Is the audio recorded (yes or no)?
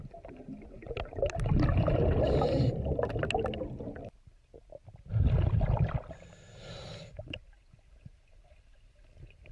yes